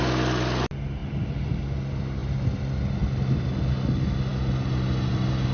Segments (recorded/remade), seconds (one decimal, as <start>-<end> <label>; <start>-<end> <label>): 0.0-5.5 recorded

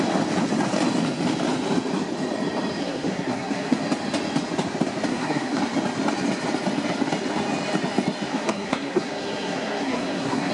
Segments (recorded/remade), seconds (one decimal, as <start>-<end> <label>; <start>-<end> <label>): 0.0-2.8 recorded; 2.8-3.8 remade; 3.8-5.1 recorded; 5.1-5.6 remade; 5.6-8.3 recorded; 8.3-10.5 remade